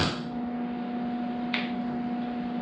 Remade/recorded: recorded